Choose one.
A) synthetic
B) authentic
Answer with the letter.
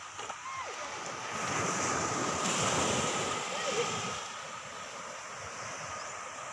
B